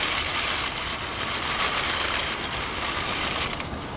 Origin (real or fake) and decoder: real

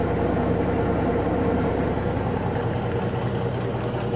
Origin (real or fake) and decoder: real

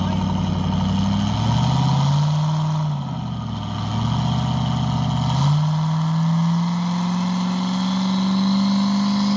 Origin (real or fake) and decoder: real